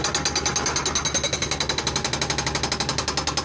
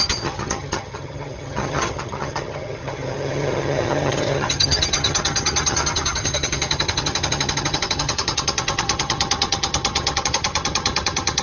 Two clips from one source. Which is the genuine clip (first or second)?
first